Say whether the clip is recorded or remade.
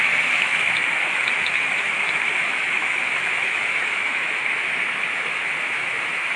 remade